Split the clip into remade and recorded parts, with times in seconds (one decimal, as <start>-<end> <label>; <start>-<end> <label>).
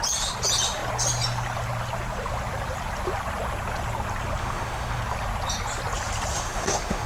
0.0-4.4 recorded; 4.4-5.0 remade; 5.0-6.3 recorded; 6.3-7.1 remade